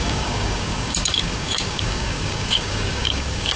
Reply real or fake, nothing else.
fake